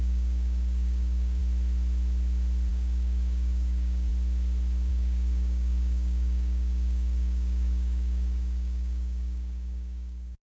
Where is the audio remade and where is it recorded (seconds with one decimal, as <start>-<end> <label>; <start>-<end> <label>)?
0.0-1.4 remade; 1.4-2.7 recorded; 2.7-4.1 remade; 4.1-4.9 recorded; 4.9-10.4 remade

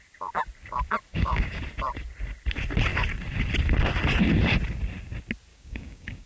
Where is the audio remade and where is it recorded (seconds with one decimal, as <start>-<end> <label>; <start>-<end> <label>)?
0.0-1.1 recorded; 1.1-1.6 remade; 1.6-5.5 recorded; 5.5-6.3 remade